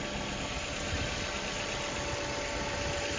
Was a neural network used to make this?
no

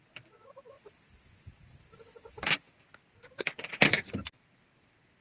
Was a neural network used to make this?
no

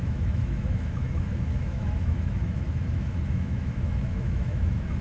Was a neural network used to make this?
yes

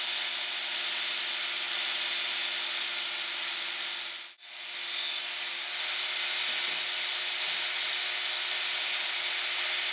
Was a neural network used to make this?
no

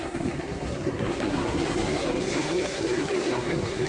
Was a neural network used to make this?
yes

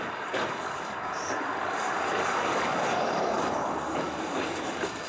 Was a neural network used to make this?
yes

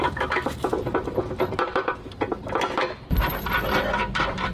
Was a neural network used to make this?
yes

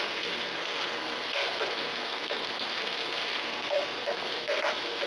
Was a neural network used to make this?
yes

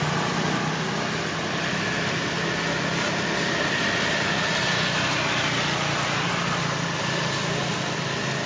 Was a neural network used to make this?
no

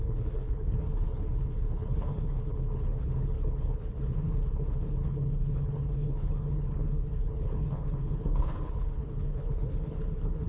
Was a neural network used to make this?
yes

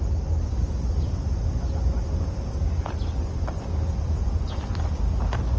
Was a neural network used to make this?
no